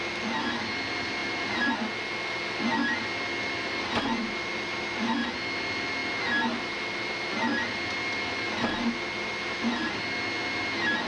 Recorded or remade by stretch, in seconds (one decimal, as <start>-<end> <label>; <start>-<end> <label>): 0.0-1.2 recorded; 1.2-1.7 remade; 1.7-11.1 recorded